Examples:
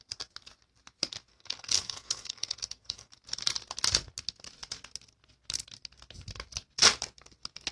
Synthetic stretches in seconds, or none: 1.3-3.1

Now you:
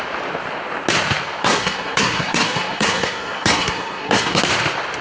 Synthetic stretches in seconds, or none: 1.4-4.4

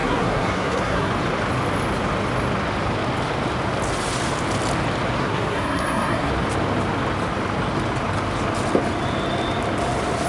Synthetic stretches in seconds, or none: 0.0-1.1; 5.2-6.3

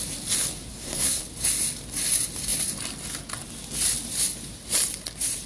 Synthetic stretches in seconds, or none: 0.7-1.2

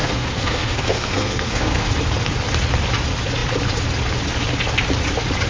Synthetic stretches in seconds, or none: 0.0-1.9

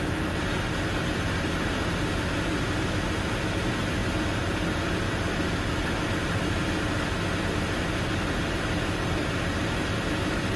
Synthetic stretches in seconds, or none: none